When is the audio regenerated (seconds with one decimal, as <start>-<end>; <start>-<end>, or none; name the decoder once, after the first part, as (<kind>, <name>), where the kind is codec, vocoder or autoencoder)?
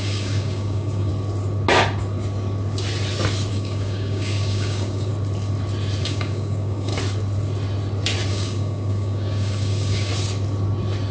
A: 0.0-1.1 (codec, DAC); 3.5-5.1; 6.0-6.9; 8.3-10.1